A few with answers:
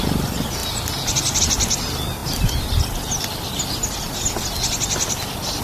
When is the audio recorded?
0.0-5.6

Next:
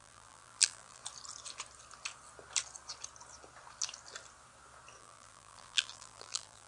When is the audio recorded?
1.0-5.0